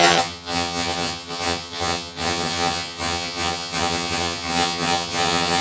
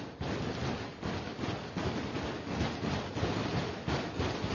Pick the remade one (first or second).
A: first